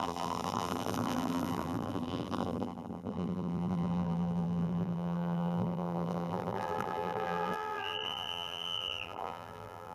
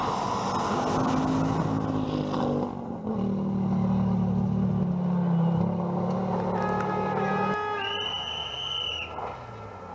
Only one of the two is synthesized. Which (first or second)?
first